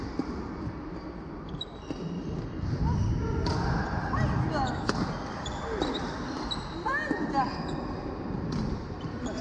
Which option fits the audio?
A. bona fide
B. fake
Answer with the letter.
A